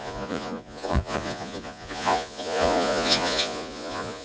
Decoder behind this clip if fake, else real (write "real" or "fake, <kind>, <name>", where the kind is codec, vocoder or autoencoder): fake, vocoder, Vocos